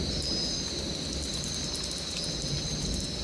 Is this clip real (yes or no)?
yes